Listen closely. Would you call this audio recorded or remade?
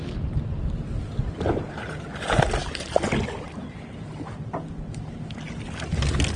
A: recorded